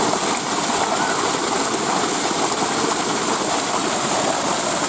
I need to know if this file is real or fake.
real